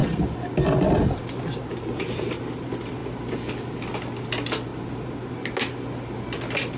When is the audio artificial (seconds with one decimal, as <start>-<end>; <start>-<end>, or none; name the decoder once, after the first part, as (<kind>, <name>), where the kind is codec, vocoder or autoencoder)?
1.7-2.6 (vocoder, BigVGAN v2)